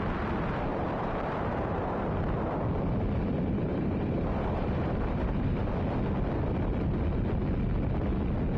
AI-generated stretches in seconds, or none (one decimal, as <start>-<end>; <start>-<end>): 0.7-1.8; 3.7-5.7

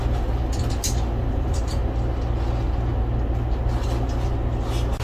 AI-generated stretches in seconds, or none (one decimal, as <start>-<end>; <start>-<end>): 1.3-1.8

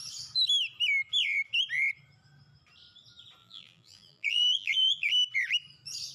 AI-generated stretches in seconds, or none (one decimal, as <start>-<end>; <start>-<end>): 3.4-5.1

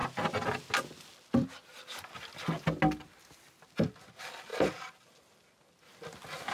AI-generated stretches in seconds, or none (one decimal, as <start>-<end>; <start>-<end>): 4.5-5.5

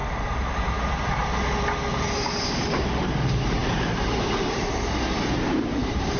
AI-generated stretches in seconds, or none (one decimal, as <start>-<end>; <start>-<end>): 0.0-1.2; 3.0-6.2

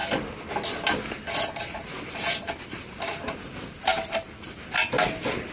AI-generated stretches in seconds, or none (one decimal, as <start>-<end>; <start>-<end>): none